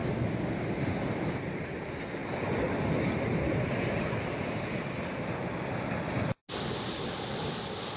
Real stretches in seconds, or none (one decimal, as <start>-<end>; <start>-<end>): 0.0-8.0